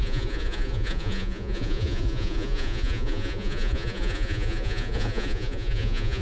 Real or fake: fake